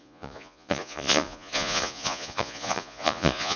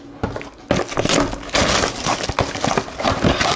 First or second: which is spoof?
first